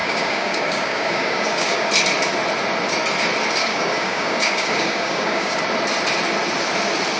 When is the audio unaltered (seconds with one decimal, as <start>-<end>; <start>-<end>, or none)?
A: 1.9-3.6; 5.6-7.2